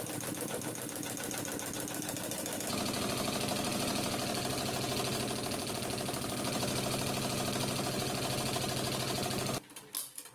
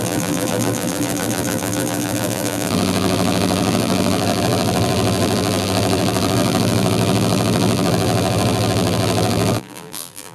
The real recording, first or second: first